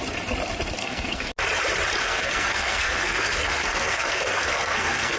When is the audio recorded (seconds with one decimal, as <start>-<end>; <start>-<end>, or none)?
0.0-0.8; 1.3-2.0